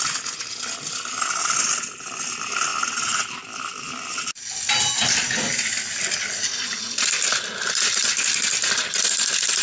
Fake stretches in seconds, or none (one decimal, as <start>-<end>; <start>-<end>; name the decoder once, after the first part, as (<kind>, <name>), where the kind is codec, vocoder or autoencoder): none